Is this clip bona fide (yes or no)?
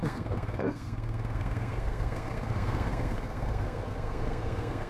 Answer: no